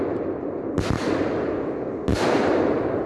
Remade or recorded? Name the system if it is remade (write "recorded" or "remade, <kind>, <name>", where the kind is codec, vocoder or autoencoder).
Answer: recorded